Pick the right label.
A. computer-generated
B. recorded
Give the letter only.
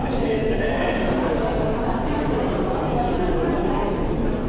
B